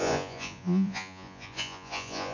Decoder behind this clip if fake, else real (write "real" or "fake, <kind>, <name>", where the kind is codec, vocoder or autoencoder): fake, vocoder, Vocos